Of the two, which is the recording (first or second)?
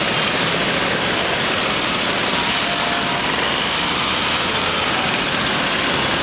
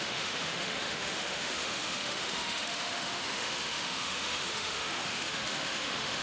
first